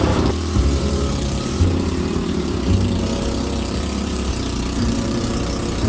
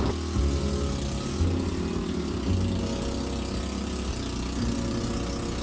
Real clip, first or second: second